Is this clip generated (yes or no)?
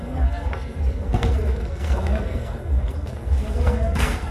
yes